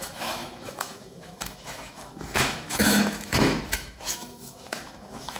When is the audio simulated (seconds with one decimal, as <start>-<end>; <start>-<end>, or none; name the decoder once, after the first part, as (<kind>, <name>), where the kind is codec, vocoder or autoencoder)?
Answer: 0.0-5.4 (autoencoder, DAC-VAE)